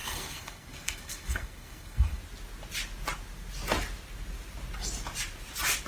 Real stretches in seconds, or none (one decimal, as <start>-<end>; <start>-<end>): 2.2-5.9